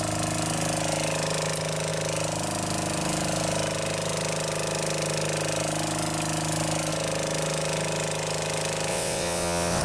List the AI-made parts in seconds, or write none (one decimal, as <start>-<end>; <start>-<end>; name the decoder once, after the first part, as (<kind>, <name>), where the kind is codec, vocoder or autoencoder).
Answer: 8.9-9.8 (vocoder, WaveNeXt)

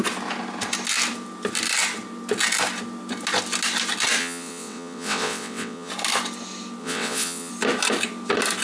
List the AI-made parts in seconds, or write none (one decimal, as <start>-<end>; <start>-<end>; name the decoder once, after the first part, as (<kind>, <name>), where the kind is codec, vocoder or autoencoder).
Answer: 4.2-5.9 (vocoder, WaveNeXt); 6.8-7.5

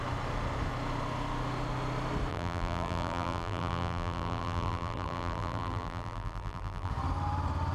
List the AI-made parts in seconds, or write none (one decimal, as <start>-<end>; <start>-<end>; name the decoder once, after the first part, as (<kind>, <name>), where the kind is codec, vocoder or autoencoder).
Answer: 2.3-6.9 (vocoder, BigVGAN v2)

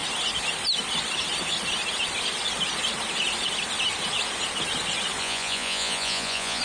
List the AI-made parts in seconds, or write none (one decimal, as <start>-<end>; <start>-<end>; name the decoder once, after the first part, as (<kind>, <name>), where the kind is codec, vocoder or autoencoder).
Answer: 5.2-6.6 (vocoder, Vocos)

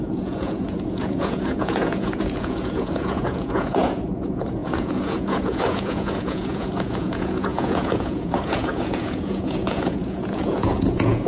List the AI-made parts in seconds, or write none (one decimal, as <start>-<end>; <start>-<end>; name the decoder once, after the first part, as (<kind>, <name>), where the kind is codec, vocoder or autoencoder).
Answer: 0.0-11.3 (vocoder, Vocos)

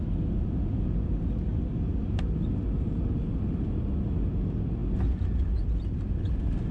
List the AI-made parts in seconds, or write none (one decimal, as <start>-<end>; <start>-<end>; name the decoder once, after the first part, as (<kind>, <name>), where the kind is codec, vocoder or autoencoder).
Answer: none